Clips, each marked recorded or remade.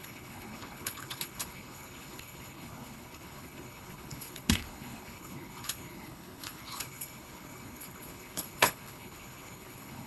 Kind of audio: remade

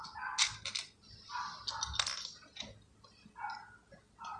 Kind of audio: recorded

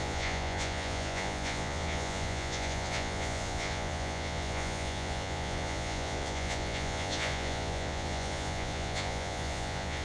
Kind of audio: remade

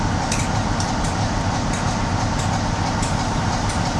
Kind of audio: recorded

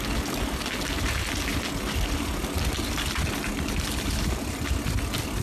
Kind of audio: recorded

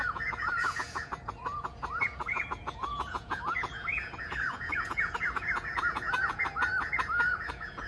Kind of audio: remade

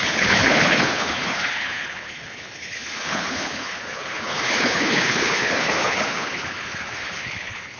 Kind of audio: remade